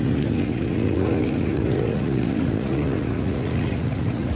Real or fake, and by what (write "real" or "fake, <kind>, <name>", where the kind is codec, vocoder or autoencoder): fake, vocoder, Vocos